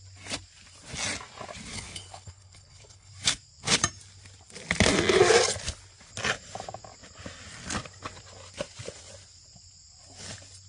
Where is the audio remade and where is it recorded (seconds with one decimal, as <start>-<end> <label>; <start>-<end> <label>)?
0.0-1.7 recorded; 1.7-3.1 remade; 3.1-10.7 recorded

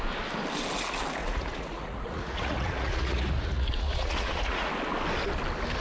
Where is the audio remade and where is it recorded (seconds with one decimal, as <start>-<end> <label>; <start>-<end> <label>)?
0.0-1.2 recorded; 1.2-4.7 remade; 4.7-5.8 recorded

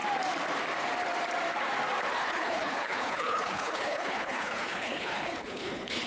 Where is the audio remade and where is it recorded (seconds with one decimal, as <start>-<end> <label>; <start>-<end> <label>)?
0.0-2.2 recorded; 2.2-6.1 remade

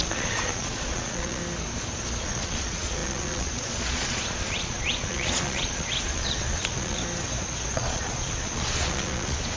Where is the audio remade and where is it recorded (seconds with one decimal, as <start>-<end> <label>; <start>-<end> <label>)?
0.0-1.4 remade; 1.4-2.2 recorded; 2.2-7.0 remade; 7.0-7.7 recorded; 7.7-9.6 remade

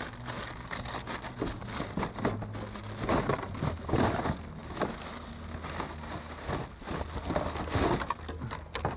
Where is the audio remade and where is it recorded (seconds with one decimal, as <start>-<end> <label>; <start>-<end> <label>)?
0.0-9.0 recorded